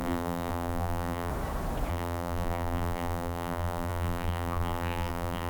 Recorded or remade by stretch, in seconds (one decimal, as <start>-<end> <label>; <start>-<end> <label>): 0.0-1.3 remade; 1.3-1.9 recorded; 1.9-5.5 remade